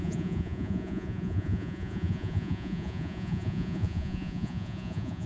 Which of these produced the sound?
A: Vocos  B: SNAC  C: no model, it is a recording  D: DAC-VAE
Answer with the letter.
A